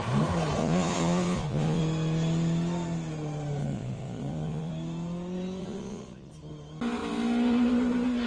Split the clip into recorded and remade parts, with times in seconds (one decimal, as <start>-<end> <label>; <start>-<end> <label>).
0.0-0.6 recorded; 0.6-1.8 remade; 1.8-3.6 recorded; 3.6-4.7 remade; 4.7-5.6 recorded; 5.6-6.3 remade; 6.3-8.3 recorded